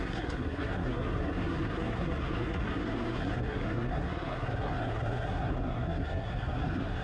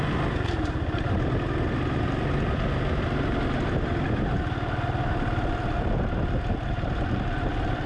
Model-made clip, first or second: first